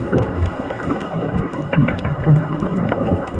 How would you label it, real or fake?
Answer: fake